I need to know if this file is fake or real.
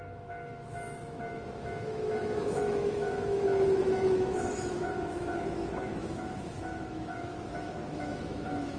fake